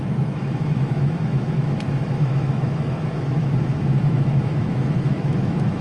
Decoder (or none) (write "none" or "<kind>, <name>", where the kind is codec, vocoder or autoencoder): autoencoder, DAC-VAE